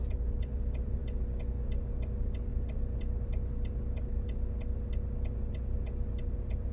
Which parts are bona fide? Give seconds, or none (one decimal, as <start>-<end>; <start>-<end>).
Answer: 0.0-6.7